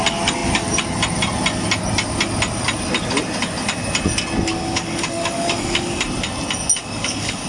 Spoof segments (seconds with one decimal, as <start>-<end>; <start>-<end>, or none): 4.5-6.0; 6.8-7.5